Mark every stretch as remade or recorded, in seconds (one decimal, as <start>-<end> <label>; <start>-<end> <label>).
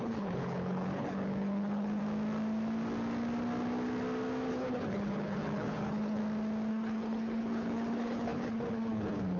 0.0-2.0 remade; 2.0-4.5 recorded; 4.5-6.2 remade; 6.2-6.7 recorded; 6.7-9.4 remade